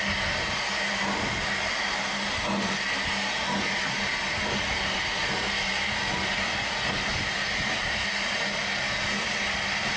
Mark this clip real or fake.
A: real